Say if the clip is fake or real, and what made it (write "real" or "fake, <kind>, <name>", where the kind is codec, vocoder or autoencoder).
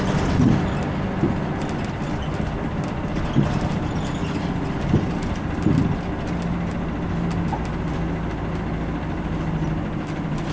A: real